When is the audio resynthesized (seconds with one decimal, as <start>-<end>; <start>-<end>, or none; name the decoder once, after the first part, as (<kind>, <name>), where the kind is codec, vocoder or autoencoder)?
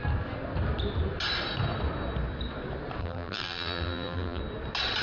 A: 3.0-4.4 (vocoder, BigVGAN v2)